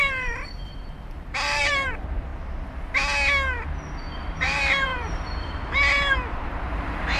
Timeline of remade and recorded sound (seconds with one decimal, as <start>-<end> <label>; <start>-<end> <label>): 0.0-2.3 remade; 2.3-4.0 recorded; 4.0-7.2 remade